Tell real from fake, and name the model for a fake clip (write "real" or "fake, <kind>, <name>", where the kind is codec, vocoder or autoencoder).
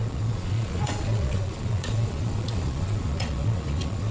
fake, vocoder, Vocos